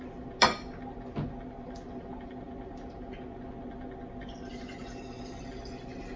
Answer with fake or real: real